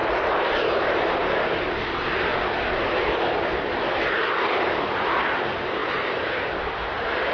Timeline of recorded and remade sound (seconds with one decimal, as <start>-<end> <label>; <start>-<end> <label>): 0.0-1.7 remade; 1.7-5.8 recorded; 5.8-6.5 remade; 6.5-7.3 recorded